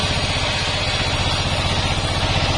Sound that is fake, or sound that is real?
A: real